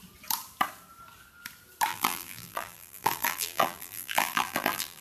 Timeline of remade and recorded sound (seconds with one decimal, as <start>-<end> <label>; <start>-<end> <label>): 0.0-1.9 recorded; 1.9-5.0 remade